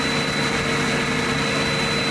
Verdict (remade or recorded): recorded